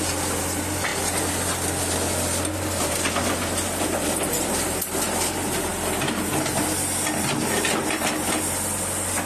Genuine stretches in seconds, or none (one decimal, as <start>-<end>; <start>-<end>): 0.0-9.3

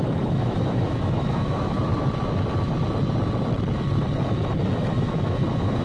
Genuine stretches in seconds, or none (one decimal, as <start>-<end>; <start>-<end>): 1.9-5.0

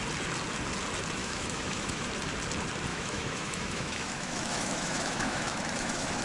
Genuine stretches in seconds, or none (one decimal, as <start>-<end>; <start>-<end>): 0.0-1.2; 2.1-2.9

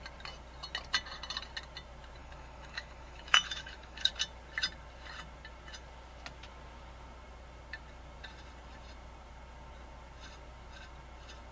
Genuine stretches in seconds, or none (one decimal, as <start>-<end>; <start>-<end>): 0.0-2.2; 4.1-11.5

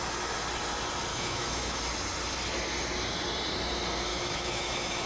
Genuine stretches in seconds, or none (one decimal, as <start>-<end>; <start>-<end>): 0.0-1.1; 1.8-4.1